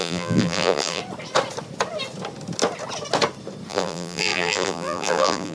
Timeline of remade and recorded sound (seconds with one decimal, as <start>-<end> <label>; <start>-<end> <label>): 0.0-1.0 remade; 1.0-3.7 recorded; 3.7-5.5 remade